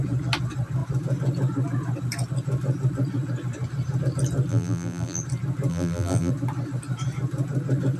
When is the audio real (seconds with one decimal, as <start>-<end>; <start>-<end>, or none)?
0.0-4.5; 5.2-5.7; 6.3-8.0